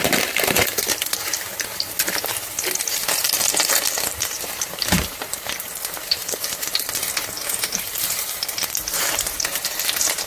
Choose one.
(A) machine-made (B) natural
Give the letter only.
A